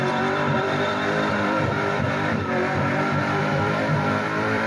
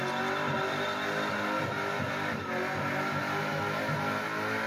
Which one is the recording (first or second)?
second